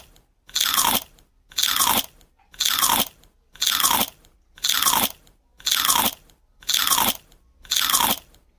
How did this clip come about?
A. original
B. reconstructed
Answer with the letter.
A